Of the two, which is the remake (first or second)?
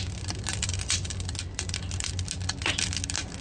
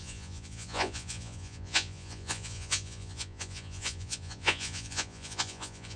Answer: second